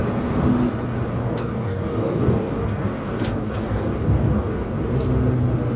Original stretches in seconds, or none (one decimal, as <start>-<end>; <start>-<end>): 0.0-1.2; 4.7-5.8